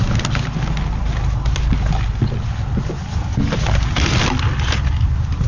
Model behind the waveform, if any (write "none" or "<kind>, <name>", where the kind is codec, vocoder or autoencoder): none